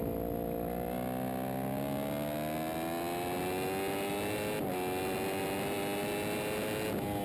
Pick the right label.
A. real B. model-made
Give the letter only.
A